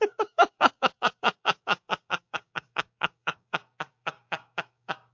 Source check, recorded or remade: remade